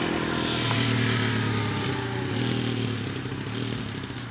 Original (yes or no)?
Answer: yes